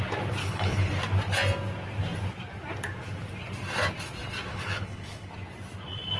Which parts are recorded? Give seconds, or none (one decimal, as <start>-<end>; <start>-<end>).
0.0-0.4; 0.9-4.5; 5.3-6.2